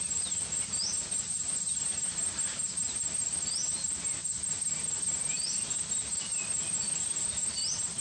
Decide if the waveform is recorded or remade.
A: recorded